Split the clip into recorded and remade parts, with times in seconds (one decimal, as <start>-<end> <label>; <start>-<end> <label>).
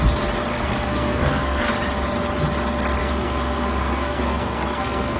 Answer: 0.0-0.5 recorded; 0.5-1.7 remade; 1.7-3.0 recorded; 3.0-5.2 remade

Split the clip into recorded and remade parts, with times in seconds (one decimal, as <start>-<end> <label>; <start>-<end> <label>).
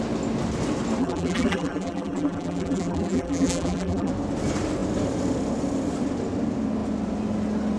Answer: 0.0-1.0 recorded; 1.0-4.1 remade; 4.1-7.8 recorded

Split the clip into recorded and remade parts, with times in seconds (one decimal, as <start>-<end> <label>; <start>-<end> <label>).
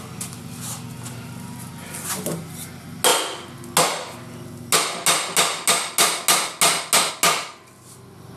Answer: 0.0-8.4 recorded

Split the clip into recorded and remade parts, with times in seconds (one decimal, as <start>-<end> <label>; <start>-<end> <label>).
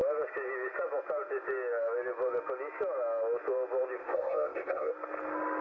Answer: 0.0-4.0 recorded; 4.0-4.9 remade; 4.9-5.6 recorded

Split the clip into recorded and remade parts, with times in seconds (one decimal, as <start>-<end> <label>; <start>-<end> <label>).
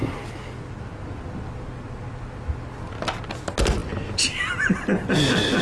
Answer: 0.0-5.6 recorded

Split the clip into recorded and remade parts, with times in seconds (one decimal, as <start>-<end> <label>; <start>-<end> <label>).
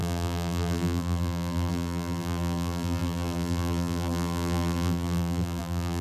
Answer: 0.0-6.0 remade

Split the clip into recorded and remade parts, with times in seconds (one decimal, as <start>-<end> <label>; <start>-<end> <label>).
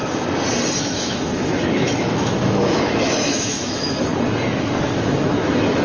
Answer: 0.0-0.8 recorded; 0.8-4.1 remade; 4.1-5.0 recorded; 5.0-5.8 remade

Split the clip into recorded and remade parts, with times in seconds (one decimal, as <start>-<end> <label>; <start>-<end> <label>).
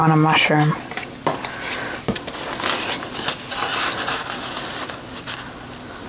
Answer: 0.0-6.1 recorded